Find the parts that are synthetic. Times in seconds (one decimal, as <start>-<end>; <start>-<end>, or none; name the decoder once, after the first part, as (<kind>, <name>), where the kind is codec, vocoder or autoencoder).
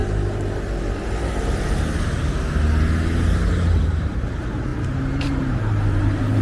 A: 3.8-6.4 (vocoder, BigVGAN v2)